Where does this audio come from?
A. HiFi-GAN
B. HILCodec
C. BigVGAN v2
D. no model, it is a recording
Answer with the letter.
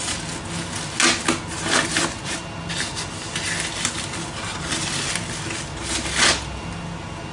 D